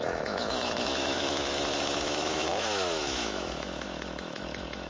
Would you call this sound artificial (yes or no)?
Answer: yes